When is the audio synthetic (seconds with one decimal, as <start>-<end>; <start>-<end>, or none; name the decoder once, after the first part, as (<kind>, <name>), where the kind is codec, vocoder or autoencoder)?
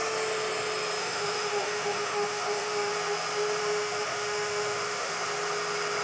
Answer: 1.0-2.9 (autoencoder, DAC-VAE); 3.6-5.1